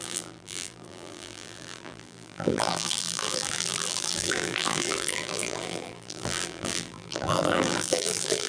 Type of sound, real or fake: fake